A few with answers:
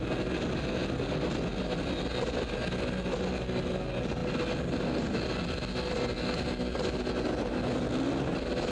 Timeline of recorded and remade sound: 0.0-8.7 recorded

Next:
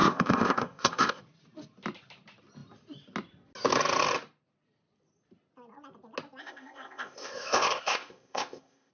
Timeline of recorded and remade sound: 0.0-1.2 remade; 1.2-6.4 recorded; 6.4-8.9 remade

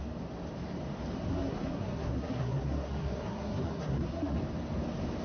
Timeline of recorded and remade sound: 0.0-1.3 recorded; 1.3-4.4 remade; 4.4-5.2 recorded

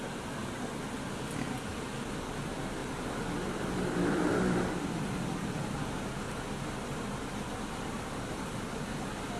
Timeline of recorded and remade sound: 0.0-2.8 recorded; 2.8-6.0 remade; 6.0-9.4 recorded

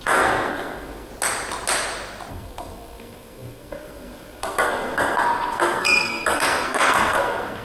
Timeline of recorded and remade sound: 0.0-1.1 remade; 1.1-2.3 recorded; 2.3-7.6 remade